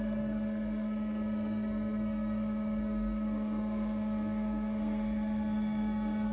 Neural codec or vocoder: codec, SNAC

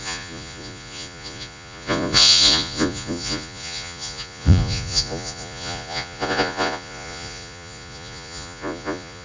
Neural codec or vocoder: vocoder, Vocos